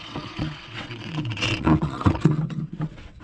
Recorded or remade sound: remade